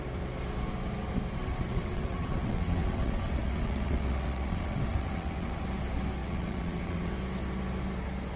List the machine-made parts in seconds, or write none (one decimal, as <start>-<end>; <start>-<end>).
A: 1.4-5.6; 6.2-7.1